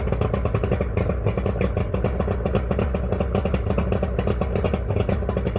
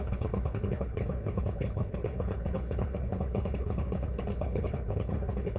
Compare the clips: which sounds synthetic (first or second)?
second